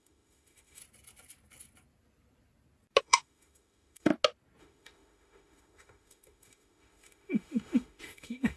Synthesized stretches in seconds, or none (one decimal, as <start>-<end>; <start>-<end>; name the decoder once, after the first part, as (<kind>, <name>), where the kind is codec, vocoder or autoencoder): 0.0-0.8 (autoencoder, DAC-VAE); 3.0-4.1; 4.6-8.6